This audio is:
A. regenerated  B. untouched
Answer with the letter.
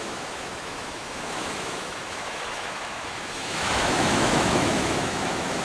A